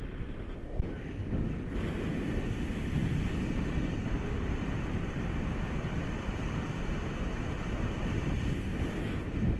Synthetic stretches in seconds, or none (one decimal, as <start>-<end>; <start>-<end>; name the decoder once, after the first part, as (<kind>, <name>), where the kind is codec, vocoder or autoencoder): 3.0-7.1 (vocoder, BigVGAN v2); 7.8-8.9